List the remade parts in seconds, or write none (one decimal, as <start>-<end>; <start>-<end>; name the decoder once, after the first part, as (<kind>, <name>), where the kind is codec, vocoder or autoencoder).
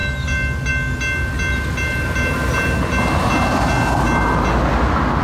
none